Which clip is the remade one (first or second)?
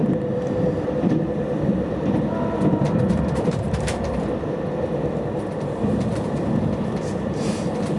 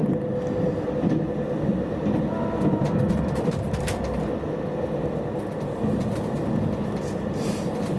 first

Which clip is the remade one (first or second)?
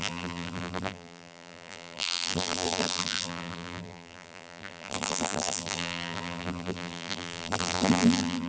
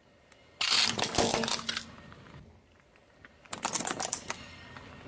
first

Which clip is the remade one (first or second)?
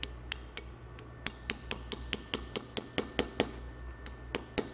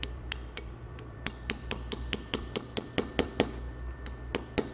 second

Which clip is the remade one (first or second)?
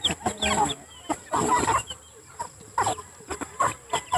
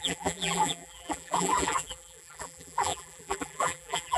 second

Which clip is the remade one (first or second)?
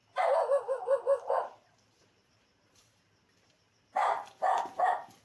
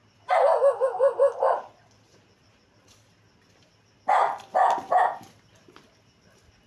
first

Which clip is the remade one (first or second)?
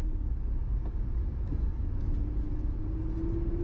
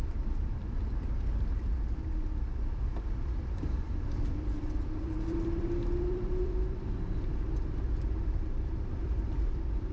second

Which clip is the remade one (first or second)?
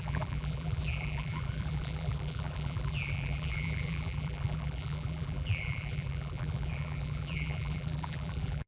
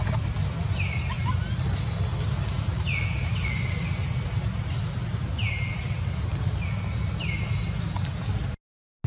first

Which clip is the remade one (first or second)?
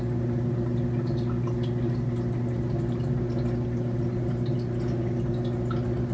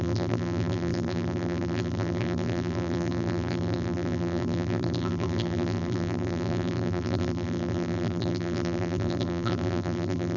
second